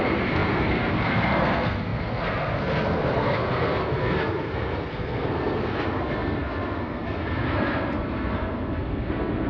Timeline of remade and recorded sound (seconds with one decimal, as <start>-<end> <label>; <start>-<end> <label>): 0.0-9.5 remade